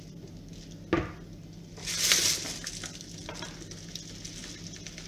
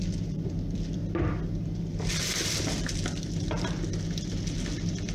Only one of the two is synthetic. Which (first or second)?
second